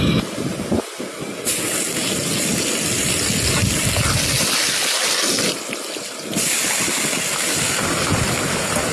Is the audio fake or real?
real